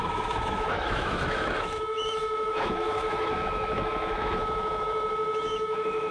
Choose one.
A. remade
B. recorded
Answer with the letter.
A